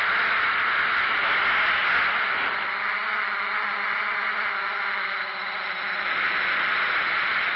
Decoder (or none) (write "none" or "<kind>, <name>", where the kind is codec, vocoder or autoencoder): none